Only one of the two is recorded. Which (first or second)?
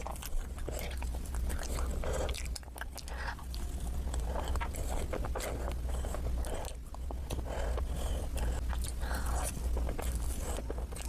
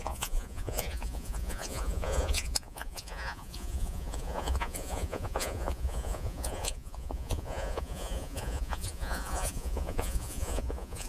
first